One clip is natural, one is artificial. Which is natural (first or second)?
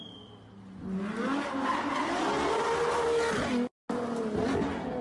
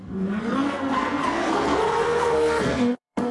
first